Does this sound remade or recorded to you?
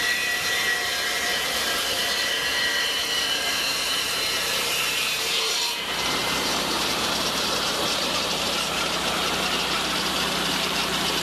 remade